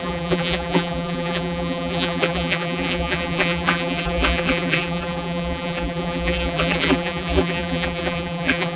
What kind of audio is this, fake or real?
fake